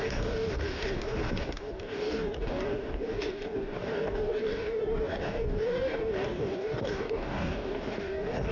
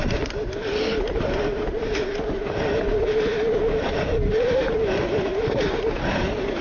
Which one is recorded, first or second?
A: second